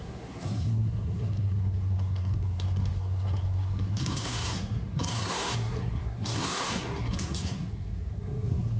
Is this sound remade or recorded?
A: remade